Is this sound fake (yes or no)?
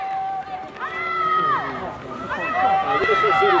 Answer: no